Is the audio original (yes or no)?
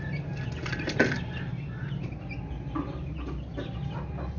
yes